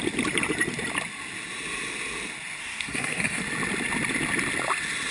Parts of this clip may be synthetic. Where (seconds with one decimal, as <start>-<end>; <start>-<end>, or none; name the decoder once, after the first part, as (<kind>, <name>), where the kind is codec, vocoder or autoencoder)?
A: 2.6-3.4 (codec, SNAC)